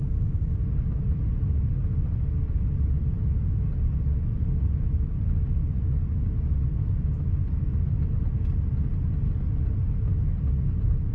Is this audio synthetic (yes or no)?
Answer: no